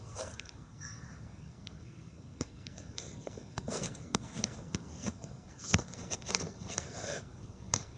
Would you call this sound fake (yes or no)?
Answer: yes